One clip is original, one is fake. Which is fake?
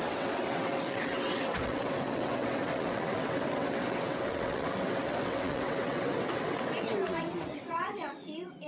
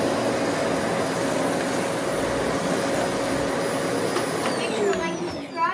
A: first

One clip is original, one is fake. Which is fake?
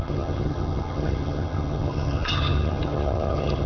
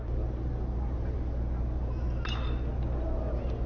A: first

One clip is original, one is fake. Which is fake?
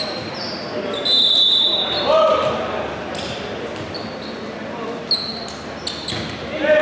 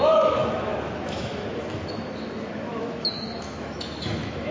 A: second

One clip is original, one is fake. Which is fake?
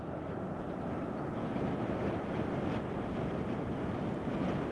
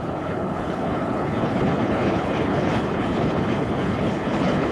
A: second